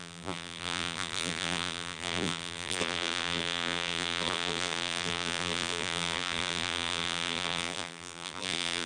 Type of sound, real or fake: fake